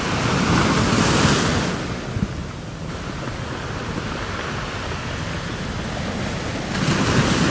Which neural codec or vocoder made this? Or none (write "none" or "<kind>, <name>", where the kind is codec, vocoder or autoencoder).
none